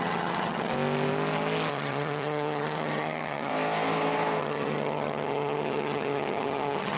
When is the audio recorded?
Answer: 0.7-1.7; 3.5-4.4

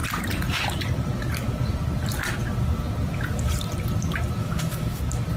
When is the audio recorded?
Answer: 0.0-4.4; 5.0-5.4

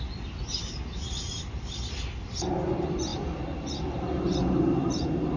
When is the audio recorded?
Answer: 0.0-5.4

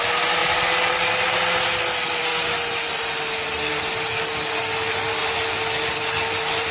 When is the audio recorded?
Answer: 0.0-6.7

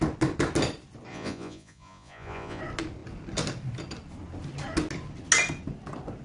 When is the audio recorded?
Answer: 0.0-1.1; 2.6-6.2

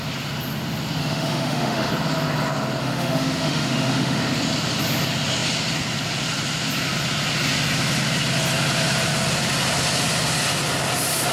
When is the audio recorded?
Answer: 0.0-1.0; 1.9-2.8; 4.2-11.3

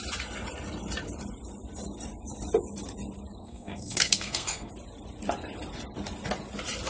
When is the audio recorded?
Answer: 0.0-3.4; 4.7-6.9